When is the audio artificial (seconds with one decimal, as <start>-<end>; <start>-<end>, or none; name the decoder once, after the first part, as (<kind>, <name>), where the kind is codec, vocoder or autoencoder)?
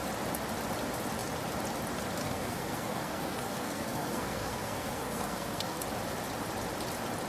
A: 2.2-5.8 (codec, SNAC)